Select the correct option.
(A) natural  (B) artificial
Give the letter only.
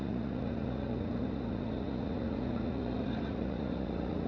B